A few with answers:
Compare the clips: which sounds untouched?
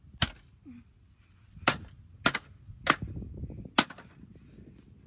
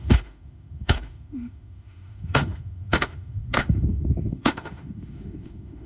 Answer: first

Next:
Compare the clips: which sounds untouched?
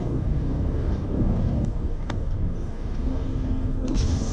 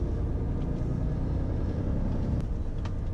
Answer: second